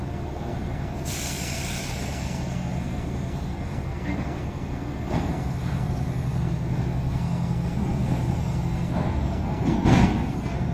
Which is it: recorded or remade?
remade